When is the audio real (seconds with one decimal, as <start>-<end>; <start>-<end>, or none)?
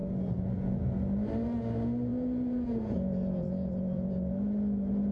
0.8-2.1; 4.1-5.1